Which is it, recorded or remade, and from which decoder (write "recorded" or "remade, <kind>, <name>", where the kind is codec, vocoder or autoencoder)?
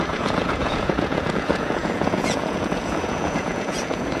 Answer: remade, vocoder, Vocos